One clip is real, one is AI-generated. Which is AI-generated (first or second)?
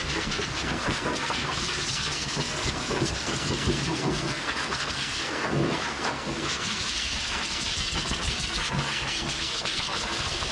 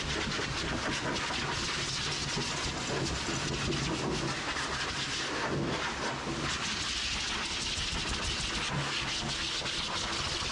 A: first